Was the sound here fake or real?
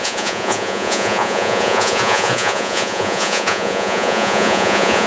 fake